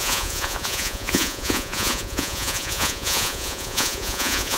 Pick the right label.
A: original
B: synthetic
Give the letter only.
B